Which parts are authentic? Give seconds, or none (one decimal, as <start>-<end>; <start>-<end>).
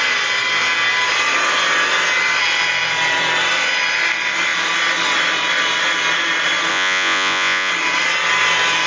0.0-6.7; 7.7-8.9